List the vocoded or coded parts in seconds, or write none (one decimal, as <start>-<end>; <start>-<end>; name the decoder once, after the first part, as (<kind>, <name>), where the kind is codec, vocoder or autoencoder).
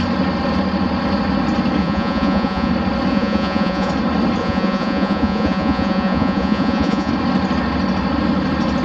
1.8-2.7 (vocoder, Vocos); 3.1-3.9; 4.4-7.1